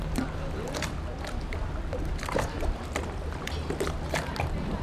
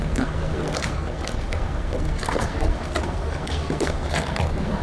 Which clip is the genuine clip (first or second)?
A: first